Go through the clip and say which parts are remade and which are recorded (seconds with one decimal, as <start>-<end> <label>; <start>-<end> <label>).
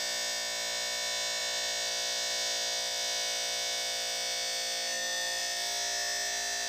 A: 0.0-6.7 recorded